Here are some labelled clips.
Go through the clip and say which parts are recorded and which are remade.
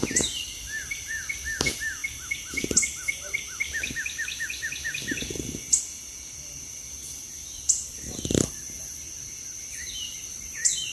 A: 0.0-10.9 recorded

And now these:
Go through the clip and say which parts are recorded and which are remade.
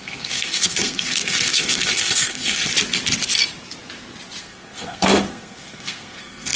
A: 0.0-2.7 remade; 2.7-4.4 recorded; 4.4-6.6 remade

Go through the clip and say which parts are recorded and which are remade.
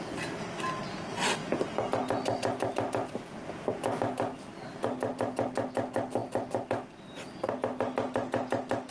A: 0.0-8.9 recorded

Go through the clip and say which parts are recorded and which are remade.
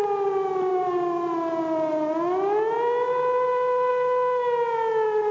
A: 0.0-5.3 recorded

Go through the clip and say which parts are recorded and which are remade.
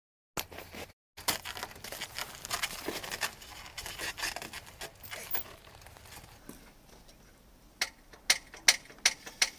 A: 0.0-9.6 recorded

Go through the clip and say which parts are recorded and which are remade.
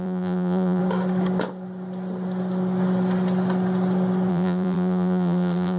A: 0.0-0.8 remade; 0.8-4.3 recorded; 4.3-5.8 remade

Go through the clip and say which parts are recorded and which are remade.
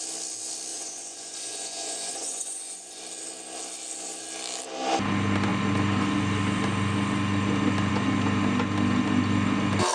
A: 0.0-0.7 recorded; 0.7-3.0 remade; 3.0-9.9 recorded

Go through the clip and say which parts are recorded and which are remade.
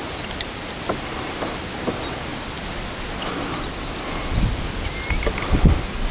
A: 0.0-6.1 recorded